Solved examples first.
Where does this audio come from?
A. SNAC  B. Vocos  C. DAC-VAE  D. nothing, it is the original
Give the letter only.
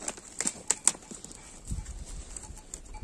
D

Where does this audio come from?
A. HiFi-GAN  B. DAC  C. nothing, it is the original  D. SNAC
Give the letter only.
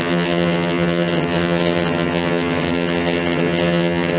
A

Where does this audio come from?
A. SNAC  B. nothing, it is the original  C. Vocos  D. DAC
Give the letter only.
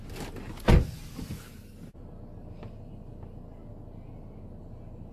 B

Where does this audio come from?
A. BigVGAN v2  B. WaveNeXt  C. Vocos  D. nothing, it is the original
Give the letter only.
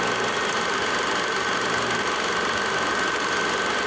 D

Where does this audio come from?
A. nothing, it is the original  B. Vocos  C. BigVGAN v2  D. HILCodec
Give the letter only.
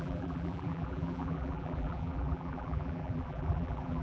C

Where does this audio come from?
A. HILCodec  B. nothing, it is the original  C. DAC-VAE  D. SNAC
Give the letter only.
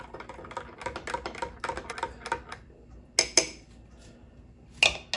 B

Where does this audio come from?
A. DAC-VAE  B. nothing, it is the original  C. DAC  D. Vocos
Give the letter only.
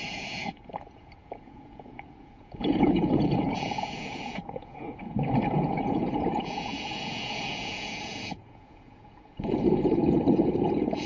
D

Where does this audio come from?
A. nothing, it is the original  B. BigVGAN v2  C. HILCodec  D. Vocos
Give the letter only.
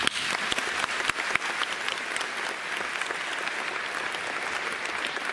A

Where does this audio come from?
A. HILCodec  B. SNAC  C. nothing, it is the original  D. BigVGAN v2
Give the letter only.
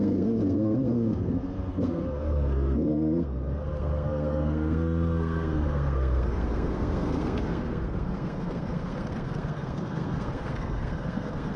B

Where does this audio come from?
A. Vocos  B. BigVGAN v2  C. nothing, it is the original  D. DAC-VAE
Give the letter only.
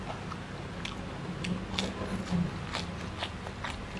C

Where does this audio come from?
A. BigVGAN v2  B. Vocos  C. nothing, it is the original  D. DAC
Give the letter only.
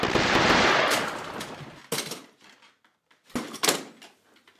C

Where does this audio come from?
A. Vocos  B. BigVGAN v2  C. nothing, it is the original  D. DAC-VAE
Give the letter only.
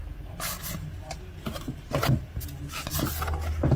C